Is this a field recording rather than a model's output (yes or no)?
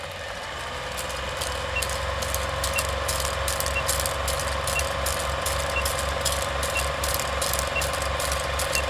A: yes